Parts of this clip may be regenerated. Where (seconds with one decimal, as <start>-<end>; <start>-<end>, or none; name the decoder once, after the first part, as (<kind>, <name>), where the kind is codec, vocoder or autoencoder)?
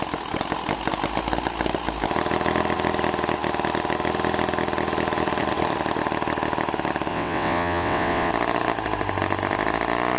7.1-8.3 (vocoder, WaveNeXt)